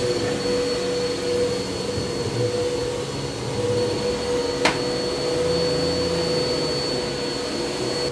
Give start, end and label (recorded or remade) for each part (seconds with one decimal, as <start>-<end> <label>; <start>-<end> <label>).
0.0-8.1 recorded